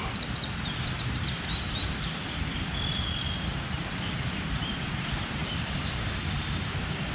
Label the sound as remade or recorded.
remade